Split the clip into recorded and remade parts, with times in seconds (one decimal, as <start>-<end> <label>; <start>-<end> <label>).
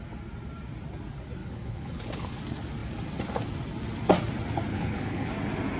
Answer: 0.0-1.4 recorded; 1.4-2.4 remade; 2.4-4.7 recorded; 4.7-5.3 remade; 5.3-5.8 recorded